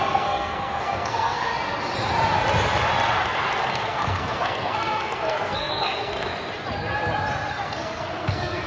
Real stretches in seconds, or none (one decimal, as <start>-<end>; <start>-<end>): 1.5-3.7; 6.3-7.5